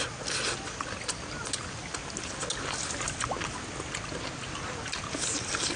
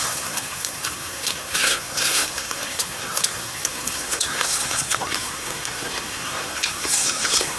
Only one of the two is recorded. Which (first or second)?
first